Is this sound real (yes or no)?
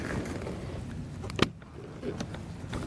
yes